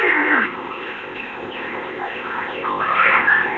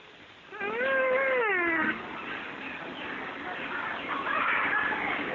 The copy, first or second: first